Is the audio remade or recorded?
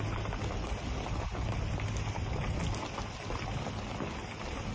recorded